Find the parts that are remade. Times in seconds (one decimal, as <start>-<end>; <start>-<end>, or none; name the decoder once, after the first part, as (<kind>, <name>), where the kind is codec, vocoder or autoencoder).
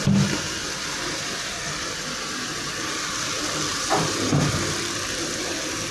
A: 3.7-4.7 (vocoder, BigVGAN v2)